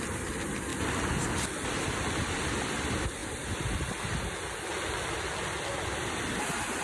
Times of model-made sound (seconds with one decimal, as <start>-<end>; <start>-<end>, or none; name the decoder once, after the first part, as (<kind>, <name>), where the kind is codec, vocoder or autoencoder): none